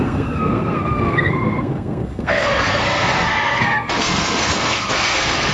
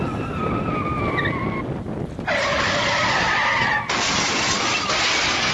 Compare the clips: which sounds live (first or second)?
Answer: second